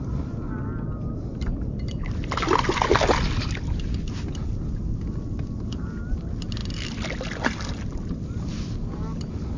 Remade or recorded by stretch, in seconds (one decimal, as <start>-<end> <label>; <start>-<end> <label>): 0.0-9.6 recorded